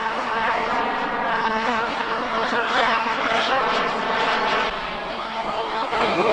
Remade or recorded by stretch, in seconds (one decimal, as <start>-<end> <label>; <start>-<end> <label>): 0.0-0.7 remade; 0.7-1.3 recorded; 1.3-3.6 remade; 3.6-5.1 recorded; 5.1-6.3 remade

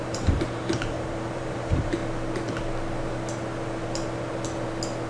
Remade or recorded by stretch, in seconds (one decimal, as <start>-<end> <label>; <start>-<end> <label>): 0.0-2.0 remade; 2.0-5.1 recorded

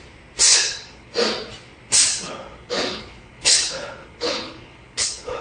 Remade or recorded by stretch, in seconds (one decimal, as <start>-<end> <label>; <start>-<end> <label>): 0.0-0.5 recorded; 0.5-1.1 remade; 1.1-2.1 recorded; 2.1-5.4 remade

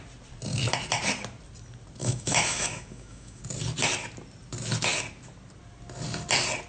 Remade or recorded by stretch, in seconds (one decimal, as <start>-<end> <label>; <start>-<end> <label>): 0.0-2.0 recorded; 2.0-3.4 remade; 3.4-6.7 recorded

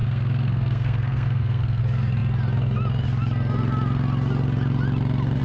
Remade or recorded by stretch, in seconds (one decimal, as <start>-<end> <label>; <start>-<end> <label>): 0.0-1.8 remade; 1.8-5.4 recorded

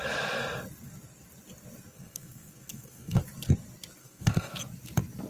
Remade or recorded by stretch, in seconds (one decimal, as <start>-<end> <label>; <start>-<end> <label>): 0.0-1.9 recorded; 1.9-3.2 remade; 3.2-4.0 recorded; 4.0-4.6 remade; 4.6-5.3 recorded

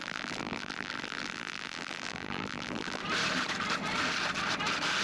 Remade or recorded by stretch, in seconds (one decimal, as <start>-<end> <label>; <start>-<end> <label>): 0.0-3.0 remade; 3.0-5.0 recorded